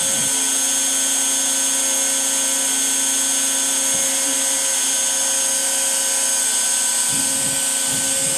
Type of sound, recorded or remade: recorded